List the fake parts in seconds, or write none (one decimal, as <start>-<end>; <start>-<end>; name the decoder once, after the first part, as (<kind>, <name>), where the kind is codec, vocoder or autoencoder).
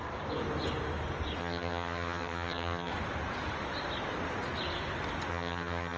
1.4-2.9 (vocoder, HiFi-GAN); 5.3-6.0